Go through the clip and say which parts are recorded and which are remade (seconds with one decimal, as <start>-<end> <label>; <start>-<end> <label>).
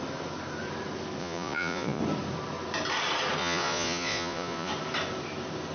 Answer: 0.0-1.2 recorded; 1.2-2.0 remade; 2.0-3.4 recorded; 3.4-4.7 remade; 4.7-5.7 recorded